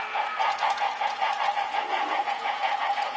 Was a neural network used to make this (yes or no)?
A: yes